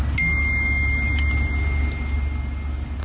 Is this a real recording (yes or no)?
yes